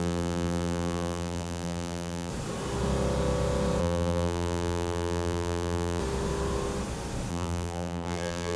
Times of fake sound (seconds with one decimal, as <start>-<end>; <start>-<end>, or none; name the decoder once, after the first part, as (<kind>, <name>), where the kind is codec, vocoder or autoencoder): 0.0-2.3 (vocoder, BigVGAN v2); 3.8-6.0; 7.3-8.6